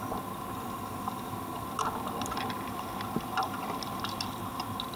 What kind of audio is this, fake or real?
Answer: real